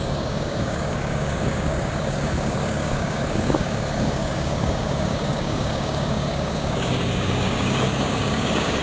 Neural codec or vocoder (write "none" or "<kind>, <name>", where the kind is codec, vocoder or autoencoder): codec, DAC